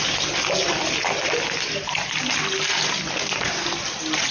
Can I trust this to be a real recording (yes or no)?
yes